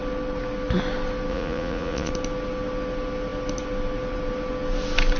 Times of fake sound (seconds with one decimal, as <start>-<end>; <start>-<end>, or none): 1.3-2.1